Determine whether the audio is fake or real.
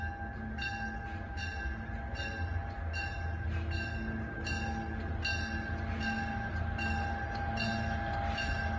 real